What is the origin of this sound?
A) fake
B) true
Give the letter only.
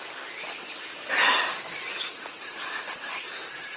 B